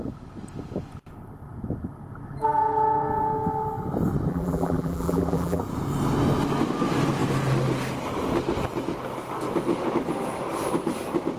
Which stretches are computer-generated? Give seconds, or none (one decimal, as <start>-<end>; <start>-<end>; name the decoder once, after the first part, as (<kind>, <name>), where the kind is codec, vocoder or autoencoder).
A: 4.3-5.6 (vocoder, BigVGAN v2)